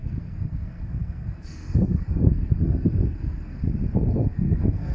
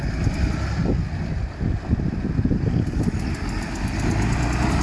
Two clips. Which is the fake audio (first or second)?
first